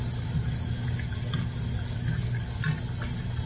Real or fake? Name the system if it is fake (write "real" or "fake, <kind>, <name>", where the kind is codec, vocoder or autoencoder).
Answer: real